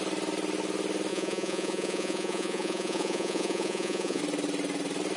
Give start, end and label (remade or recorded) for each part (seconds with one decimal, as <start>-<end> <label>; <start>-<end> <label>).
0.0-1.1 recorded; 1.1-4.2 remade; 4.2-5.2 recorded